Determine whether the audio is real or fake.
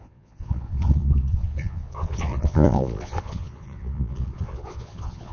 fake